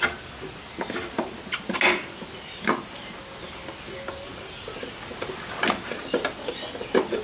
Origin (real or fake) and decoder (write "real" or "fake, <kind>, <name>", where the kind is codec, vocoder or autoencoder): real